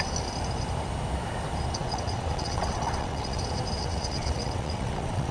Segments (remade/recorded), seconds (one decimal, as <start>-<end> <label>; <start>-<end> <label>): 0.0-1.8 recorded; 1.8-3.4 remade; 3.4-3.8 recorded; 3.8-5.3 remade